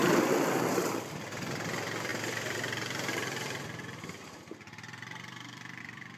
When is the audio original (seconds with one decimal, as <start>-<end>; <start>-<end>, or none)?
0.0-0.7